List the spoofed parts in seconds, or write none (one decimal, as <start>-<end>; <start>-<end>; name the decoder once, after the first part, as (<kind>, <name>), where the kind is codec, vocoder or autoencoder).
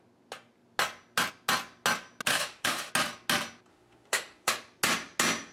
2.3-2.9 (autoencoder, DAC-VAE); 3.7-4.5